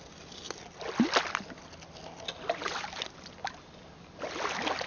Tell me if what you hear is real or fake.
real